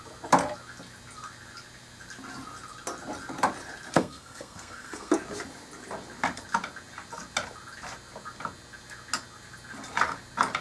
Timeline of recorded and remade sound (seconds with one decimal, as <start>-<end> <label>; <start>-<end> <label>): 0.0-3.9 recorded; 3.9-5.1 remade; 5.1-10.6 recorded